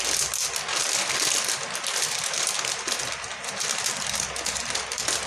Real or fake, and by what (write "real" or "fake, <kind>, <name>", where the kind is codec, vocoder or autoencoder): real